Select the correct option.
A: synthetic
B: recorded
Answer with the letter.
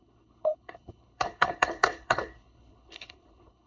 A